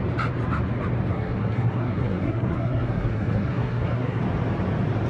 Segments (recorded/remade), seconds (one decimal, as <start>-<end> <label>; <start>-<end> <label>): 0.0-1.1 recorded; 1.1-4.2 remade; 4.2-5.1 recorded